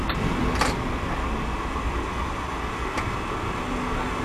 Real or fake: real